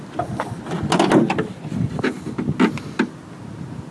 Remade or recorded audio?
recorded